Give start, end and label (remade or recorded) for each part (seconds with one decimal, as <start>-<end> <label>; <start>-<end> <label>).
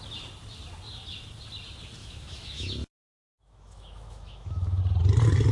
0.0-2.0 recorded; 2.0-4.8 remade; 4.8-5.5 recorded